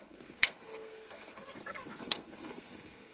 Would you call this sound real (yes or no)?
no